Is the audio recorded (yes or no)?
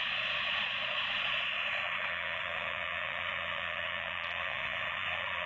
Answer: no